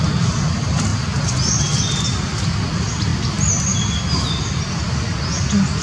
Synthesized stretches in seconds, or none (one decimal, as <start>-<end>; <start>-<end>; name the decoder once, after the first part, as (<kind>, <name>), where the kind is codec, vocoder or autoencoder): none